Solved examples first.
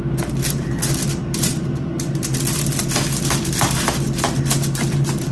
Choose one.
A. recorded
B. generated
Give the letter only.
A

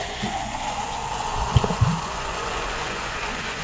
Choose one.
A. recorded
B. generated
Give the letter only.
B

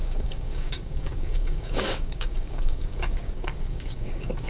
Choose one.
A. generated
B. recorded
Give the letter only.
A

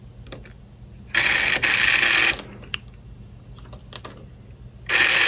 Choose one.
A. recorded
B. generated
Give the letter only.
A